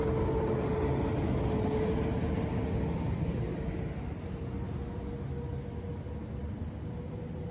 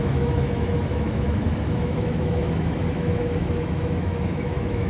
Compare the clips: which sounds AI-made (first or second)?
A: second